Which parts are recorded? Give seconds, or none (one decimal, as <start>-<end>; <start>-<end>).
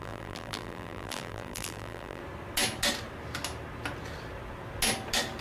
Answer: 2.2-5.4